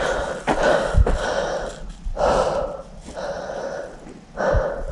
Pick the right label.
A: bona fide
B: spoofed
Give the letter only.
A